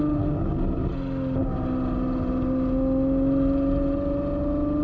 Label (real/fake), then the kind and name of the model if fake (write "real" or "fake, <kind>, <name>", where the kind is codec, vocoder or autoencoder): real